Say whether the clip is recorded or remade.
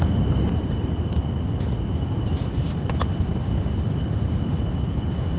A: recorded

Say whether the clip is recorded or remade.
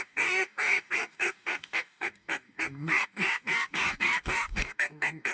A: remade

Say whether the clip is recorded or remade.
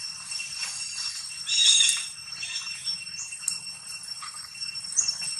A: recorded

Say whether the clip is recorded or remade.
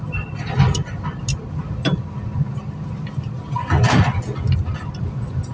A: recorded